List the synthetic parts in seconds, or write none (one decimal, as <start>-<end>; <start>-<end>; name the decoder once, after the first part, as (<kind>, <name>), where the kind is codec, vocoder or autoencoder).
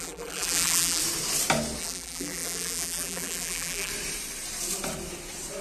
0.0-1.0 (vocoder, BigVGAN v2); 1.8-3.9